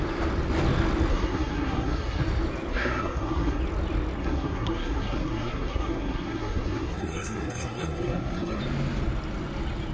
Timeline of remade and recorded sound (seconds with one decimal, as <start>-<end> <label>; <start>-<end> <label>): 0.0-1.1 recorded; 1.1-2.2 remade; 2.2-2.7 recorded; 2.7-3.6 remade; 3.6-4.2 recorded; 4.2-8.6 remade; 8.6-9.9 recorded